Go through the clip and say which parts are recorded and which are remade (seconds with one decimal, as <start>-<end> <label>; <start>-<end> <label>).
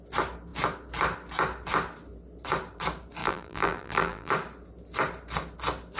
0.0-3.2 recorded; 3.2-4.3 remade; 4.3-6.0 recorded